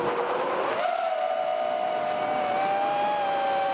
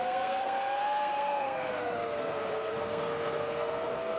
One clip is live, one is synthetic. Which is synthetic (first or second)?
second